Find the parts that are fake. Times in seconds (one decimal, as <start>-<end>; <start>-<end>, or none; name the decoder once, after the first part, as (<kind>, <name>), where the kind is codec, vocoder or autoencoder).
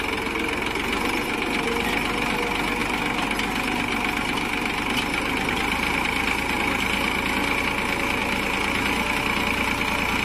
none